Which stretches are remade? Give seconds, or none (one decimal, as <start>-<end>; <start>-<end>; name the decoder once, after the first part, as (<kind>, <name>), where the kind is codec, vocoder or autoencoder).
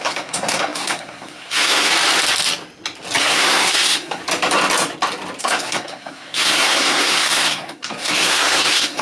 0.0-1.9 (codec, SNAC); 3.2-4.2; 5.4-9.0